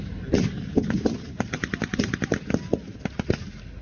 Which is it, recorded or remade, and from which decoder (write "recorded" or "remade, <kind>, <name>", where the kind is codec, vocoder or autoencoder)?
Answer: recorded